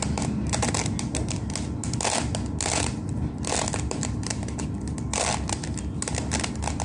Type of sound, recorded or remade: recorded